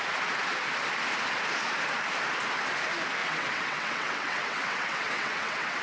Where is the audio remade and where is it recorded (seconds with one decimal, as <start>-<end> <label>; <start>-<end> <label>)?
0.0-3.2 recorded; 3.2-5.8 remade